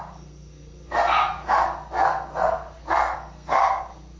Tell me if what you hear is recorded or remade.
remade